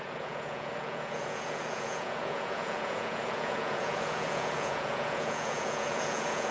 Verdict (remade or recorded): remade